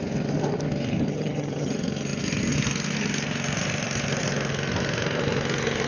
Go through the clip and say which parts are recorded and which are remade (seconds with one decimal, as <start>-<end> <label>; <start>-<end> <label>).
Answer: 0.0-1.1 recorded; 1.1-1.7 remade; 1.7-5.9 recorded